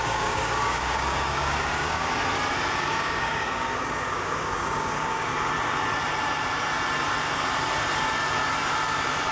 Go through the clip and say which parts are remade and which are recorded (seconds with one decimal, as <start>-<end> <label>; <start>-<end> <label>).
0.0-2.1 remade; 2.1-3.0 recorded; 3.0-5.3 remade; 5.3-9.3 recorded